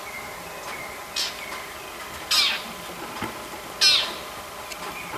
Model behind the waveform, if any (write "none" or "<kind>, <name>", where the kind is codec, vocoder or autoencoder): none